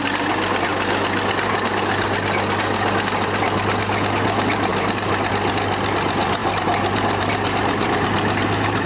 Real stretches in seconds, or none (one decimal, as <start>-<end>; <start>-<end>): 0.0-4.7; 5.3-6.4